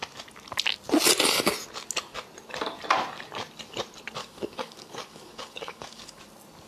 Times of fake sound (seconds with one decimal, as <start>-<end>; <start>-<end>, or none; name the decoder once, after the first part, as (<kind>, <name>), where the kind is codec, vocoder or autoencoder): 4.2-6.2 (codec, DAC)